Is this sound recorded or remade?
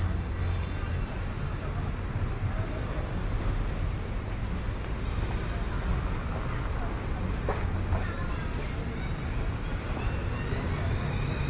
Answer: recorded